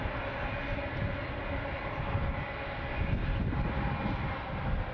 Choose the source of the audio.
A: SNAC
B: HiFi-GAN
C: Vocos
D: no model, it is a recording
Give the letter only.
D